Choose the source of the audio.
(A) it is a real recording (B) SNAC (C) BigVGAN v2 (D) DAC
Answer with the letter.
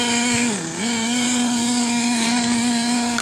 D